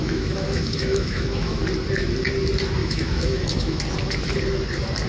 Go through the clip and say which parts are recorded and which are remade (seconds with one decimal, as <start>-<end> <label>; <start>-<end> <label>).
0.0-1.6 remade; 1.6-2.8 recorded; 2.8-3.8 remade; 3.8-5.1 recorded